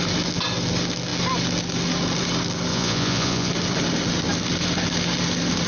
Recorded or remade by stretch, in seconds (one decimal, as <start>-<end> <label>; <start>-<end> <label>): 0.0-2.7 recorded; 2.7-3.5 remade; 3.5-5.7 recorded